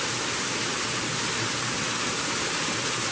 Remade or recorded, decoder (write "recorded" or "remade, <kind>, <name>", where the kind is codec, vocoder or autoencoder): recorded